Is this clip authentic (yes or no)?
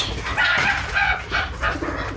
yes